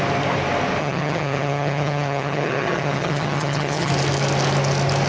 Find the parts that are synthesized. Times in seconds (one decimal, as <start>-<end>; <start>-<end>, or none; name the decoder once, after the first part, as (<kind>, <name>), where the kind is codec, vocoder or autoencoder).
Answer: 0.8-3.9 (vocoder, HiFi-GAN)